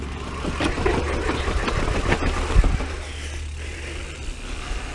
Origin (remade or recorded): recorded